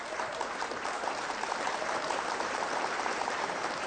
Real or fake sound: fake